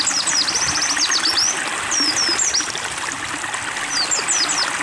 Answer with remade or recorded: recorded